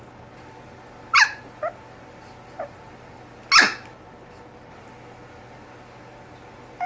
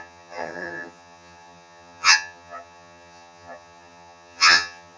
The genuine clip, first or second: first